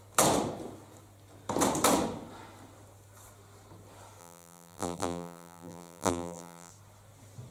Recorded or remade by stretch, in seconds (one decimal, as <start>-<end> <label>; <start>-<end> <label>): 0.0-4.2 recorded; 4.2-6.7 remade; 6.7-7.5 recorded